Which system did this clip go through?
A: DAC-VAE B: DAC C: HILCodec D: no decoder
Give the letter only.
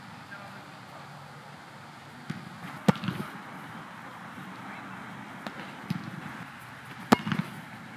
D